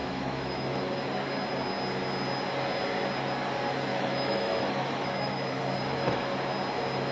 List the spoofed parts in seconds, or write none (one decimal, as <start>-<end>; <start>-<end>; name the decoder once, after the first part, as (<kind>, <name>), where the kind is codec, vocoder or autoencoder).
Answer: 0.0-0.6 (autoencoder, DAC-VAE); 3.9-5.6

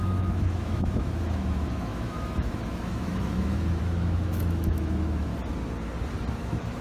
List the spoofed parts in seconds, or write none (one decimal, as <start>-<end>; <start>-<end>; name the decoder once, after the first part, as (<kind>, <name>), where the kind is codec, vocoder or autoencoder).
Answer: 0.0-5.3 (autoencoder, DAC-VAE); 6.3-6.8

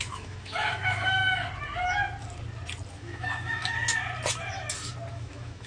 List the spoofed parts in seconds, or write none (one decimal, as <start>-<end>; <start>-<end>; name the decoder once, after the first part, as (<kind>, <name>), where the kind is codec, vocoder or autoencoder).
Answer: 0.0-1.2 (autoencoder, DAC-VAE); 2.9-3.6; 5.1-5.7